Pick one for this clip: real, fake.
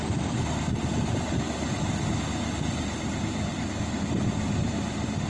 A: real